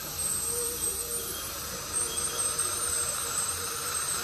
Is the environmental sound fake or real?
fake